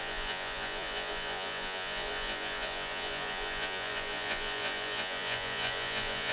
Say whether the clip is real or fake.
fake